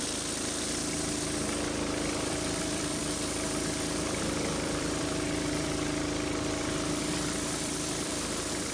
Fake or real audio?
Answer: fake